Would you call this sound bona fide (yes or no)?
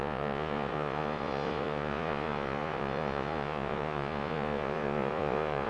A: no